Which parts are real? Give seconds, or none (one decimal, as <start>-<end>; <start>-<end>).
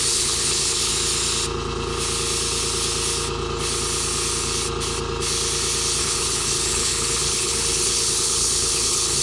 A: 0.9-6.0